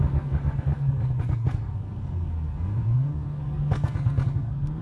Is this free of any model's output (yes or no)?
no